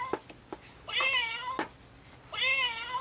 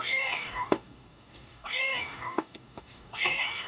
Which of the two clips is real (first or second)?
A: first